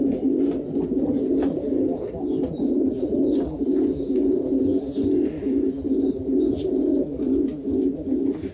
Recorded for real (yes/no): yes